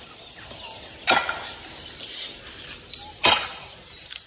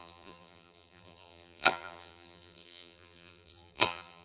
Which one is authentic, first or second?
first